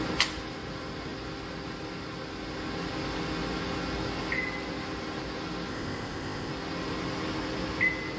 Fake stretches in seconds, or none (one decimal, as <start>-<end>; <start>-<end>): 5.7-6.5